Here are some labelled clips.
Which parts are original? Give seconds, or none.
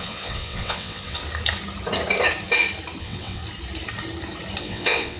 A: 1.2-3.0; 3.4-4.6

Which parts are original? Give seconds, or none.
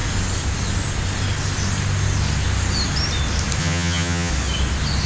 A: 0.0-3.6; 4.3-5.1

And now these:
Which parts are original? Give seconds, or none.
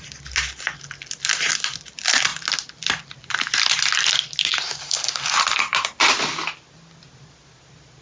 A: 0.0-4.5; 5.2-8.0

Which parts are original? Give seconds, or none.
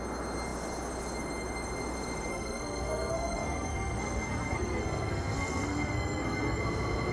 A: 0.0-2.3; 6.6-7.1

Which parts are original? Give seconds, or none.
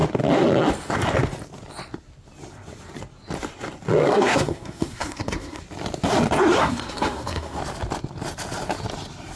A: 0.0-4.0; 5.6-6.6; 7.6-9.4